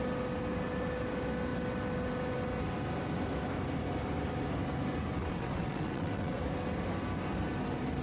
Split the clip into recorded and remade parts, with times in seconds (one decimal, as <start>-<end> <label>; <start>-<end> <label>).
0.0-5.2 recorded; 5.2-6.4 remade; 6.4-8.0 recorded